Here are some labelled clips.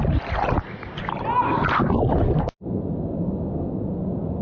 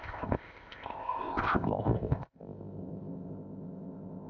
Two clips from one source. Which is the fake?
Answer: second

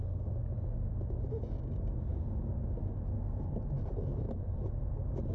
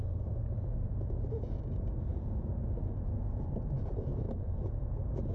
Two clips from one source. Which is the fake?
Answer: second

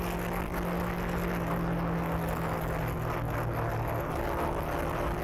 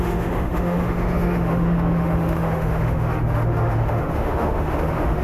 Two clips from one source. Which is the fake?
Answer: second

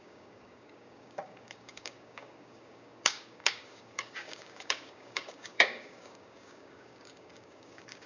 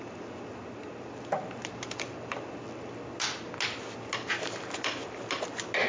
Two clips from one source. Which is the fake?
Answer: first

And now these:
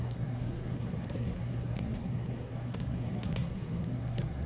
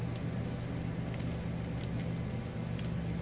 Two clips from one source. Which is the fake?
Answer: first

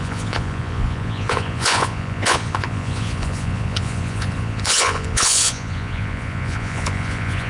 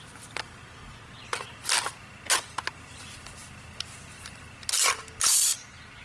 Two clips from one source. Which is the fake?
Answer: first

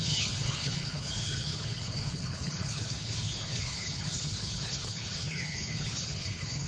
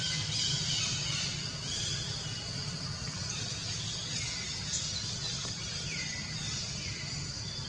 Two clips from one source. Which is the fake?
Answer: first